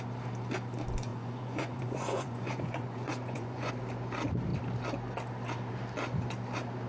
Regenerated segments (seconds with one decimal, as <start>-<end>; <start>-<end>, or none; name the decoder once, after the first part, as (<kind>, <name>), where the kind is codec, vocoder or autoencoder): 1.1-3.7 (vocoder, Vocos)